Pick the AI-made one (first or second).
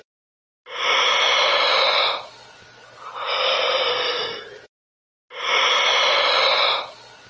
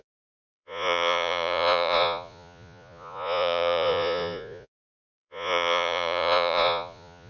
second